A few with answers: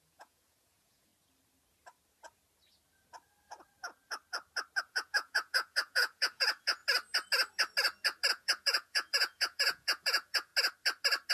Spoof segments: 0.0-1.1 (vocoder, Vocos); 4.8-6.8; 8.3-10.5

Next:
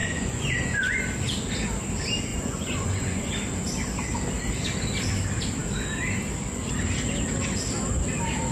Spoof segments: 0.0-1.0 (vocoder, Vocos); 2.3-3.3

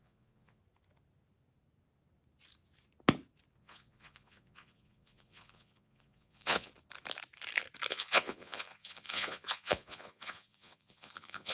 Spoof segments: 0.0-0.6 (vocoder, Vocos); 3.6-6.7; 7.9-11.5

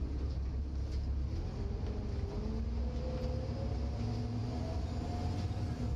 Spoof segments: none